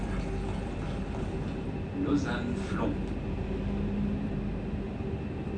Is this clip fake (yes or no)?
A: no